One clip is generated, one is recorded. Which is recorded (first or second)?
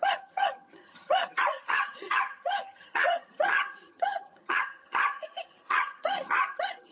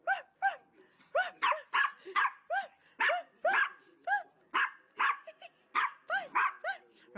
second